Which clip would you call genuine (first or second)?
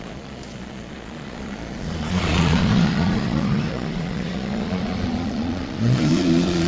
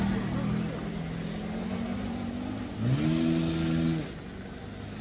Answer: second